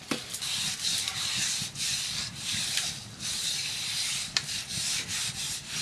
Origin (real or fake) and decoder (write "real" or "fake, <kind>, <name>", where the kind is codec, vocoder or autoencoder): real